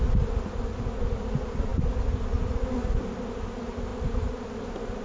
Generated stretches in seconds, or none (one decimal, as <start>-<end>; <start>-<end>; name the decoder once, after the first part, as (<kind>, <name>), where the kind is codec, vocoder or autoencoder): none